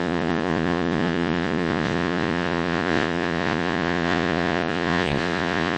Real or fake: fake